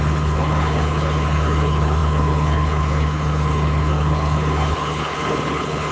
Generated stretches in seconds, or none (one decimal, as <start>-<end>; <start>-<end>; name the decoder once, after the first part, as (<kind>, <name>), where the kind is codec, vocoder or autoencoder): 0.0-5.9 (codec, HILCodec)

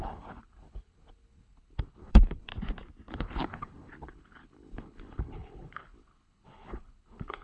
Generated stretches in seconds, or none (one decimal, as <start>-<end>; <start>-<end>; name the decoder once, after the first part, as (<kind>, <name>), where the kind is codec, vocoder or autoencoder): 0.0-2.5 (codec, HILCodec); 3.1-7.4

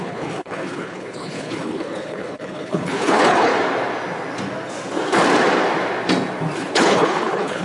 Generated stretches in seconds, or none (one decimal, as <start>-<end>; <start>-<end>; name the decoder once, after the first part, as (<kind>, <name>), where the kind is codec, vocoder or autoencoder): 0.0-3.5 (codec, HILCodec); 6.6-7.6

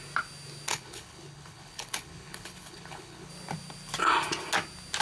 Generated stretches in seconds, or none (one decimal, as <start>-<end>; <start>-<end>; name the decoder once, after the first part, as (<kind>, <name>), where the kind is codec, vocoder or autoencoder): 0.7-3.3 (codec, HILCodec)

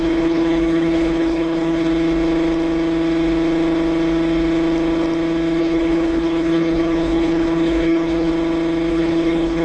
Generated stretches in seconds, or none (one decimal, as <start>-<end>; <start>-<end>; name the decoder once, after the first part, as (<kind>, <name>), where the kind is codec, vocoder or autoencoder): 0.0-1.9 (codec, HILCodec); 5.6-8.3; 8.9-9.6

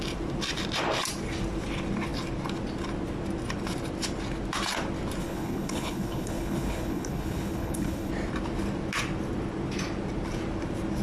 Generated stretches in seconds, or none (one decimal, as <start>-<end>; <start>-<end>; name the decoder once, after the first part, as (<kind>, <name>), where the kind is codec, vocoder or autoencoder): 5.2-8.1 (codec, HILCodec)

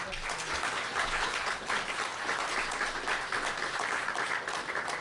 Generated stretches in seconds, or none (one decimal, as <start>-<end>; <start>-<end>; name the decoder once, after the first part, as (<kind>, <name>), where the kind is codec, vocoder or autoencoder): 1.0-1.7 (codec, HILCodec)